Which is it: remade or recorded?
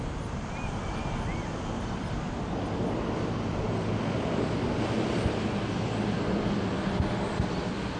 recorded